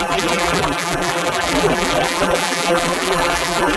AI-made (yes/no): yes